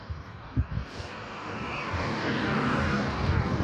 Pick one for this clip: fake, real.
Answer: fake